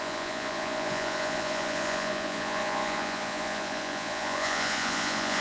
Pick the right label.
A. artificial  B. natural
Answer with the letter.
A